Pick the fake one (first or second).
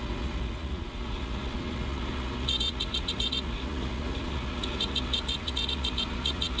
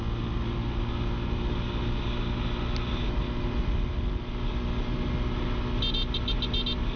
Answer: first